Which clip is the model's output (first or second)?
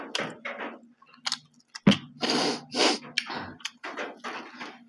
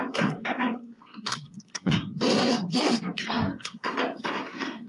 second